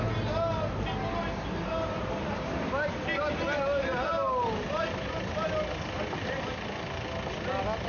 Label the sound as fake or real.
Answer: real